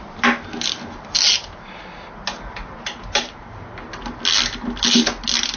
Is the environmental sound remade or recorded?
recorded